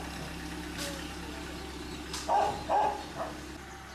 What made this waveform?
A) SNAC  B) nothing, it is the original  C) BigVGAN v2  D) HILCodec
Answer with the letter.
B